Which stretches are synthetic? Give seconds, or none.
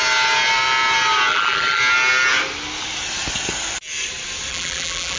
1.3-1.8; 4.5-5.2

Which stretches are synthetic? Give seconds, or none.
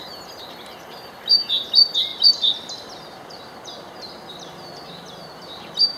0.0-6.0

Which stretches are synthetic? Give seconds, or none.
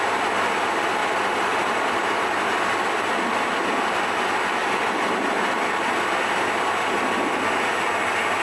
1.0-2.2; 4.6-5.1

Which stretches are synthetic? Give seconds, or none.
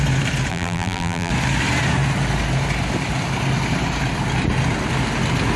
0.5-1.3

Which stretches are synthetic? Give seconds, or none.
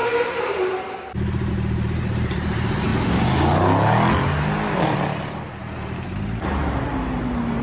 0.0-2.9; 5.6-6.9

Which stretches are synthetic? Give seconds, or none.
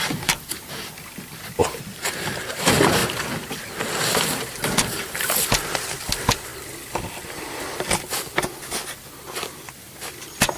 1.6-2.6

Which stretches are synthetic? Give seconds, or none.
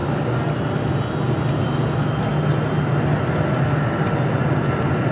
none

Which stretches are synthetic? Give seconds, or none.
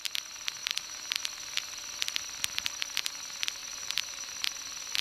0.6-1.2; 3.6-4.3